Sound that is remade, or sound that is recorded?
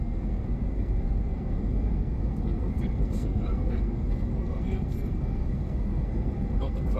remade